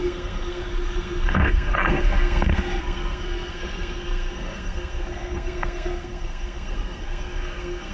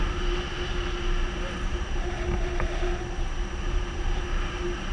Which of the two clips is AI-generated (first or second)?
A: first